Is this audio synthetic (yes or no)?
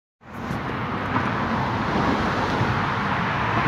no